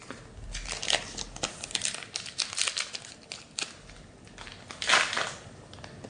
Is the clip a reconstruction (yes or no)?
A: no